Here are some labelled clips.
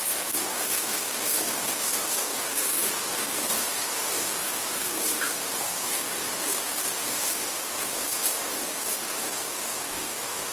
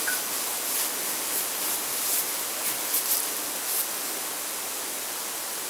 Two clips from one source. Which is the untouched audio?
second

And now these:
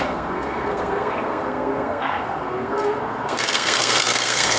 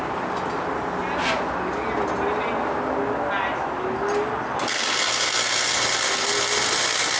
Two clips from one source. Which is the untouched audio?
second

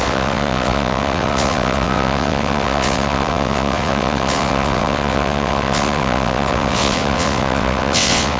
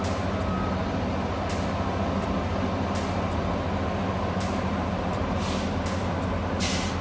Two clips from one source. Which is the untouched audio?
second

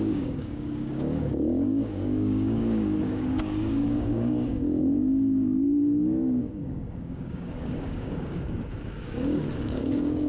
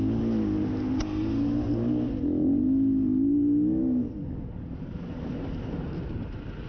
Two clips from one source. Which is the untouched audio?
second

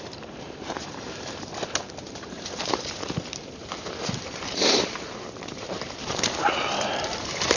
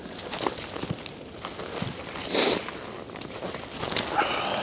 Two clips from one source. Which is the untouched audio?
second